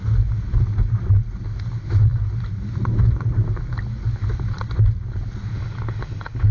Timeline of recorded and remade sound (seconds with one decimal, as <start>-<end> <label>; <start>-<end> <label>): 0.0-5.5 recorded; 5.5-6.5 remade